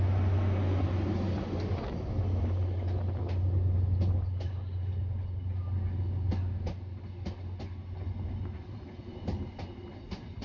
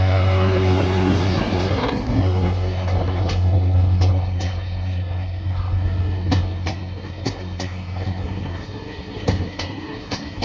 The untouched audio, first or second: first